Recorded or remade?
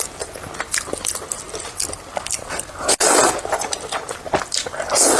recorded